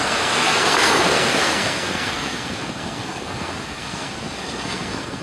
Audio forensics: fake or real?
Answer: fake